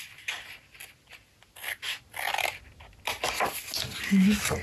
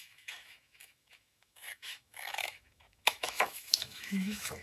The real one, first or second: first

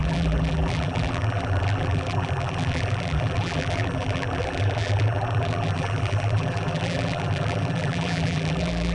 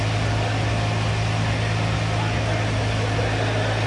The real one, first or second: second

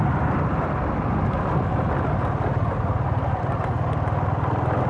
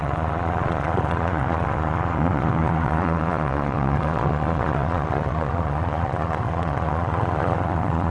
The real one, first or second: first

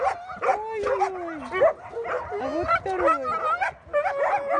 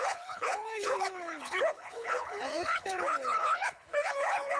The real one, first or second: first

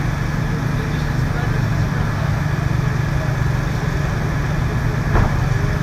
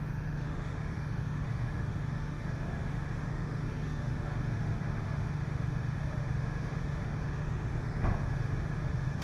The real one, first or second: first